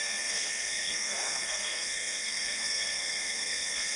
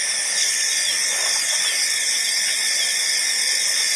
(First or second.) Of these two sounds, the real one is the second